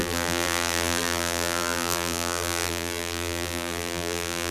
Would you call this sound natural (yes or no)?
no